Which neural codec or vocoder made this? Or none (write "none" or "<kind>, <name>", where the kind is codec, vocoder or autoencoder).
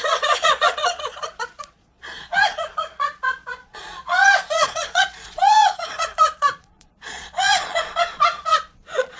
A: vocoder, Vocos